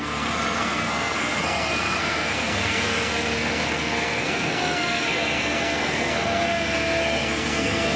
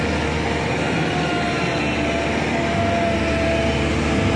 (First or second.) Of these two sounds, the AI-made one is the first